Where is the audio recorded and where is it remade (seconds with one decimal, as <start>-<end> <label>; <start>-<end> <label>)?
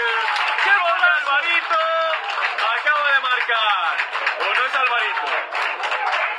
0.0-6.4 recorded